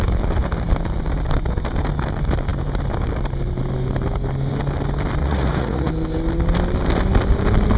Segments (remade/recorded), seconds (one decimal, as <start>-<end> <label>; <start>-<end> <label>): 0.0-5.2 recorded; 5.2-5.9 remade; 5.9-7.8 recorded